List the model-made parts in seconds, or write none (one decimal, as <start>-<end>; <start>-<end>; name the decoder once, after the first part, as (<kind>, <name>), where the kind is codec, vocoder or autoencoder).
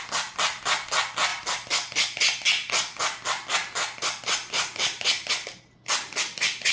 none